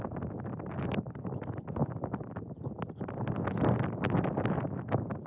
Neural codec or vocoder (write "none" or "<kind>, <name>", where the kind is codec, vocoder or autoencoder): vocoder, BigVGAN v2